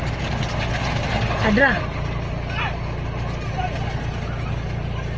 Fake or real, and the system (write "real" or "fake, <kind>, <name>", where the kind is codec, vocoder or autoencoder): real